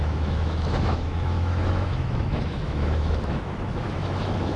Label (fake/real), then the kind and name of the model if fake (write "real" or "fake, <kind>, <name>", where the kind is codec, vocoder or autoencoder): fake, autoencoder, DAC-VAE